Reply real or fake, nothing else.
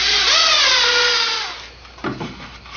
real